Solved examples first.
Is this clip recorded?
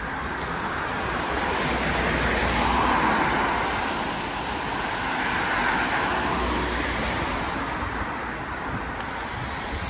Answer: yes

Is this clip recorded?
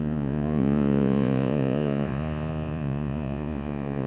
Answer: no